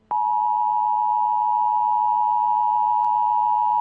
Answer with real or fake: real